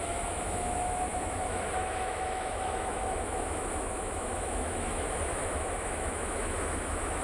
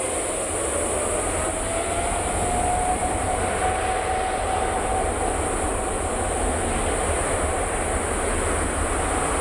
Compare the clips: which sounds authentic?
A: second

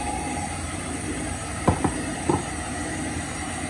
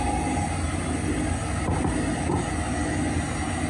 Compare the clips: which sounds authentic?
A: second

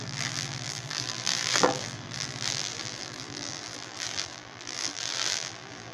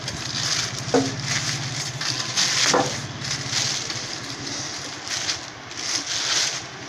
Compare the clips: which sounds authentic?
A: second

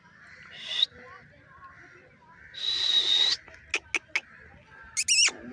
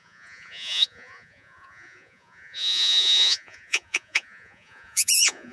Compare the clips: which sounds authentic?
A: first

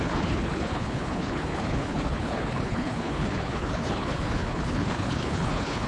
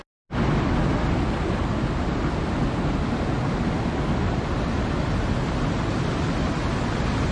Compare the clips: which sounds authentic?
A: second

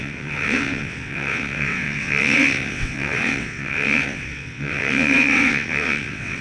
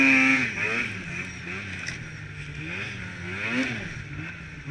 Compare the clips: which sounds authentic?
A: second